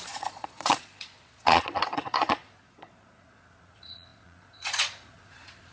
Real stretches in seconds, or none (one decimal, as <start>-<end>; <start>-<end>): none